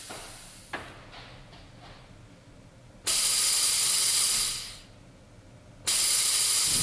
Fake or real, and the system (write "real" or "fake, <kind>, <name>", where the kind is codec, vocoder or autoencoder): real